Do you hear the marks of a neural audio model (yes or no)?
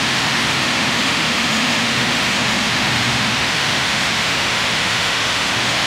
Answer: yes